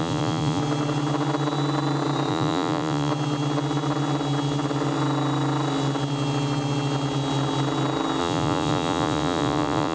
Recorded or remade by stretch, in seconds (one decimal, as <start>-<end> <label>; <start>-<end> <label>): 0.0-0.6 remade; 0.6-2.3 recorded; 2.3-3.1 remade; 3.1-8.2 recorded; 8.2-9.9 remade